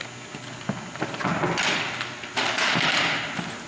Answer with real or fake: real